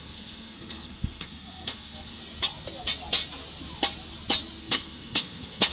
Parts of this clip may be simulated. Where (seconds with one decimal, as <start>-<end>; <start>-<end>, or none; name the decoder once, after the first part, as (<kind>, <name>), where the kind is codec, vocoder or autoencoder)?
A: 0.0-2.2 (codec, SNAC); 4.6-5.7